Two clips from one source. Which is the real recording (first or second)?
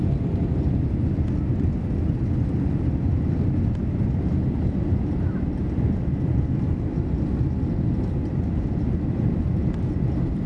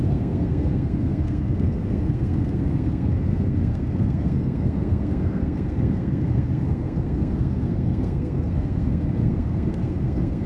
first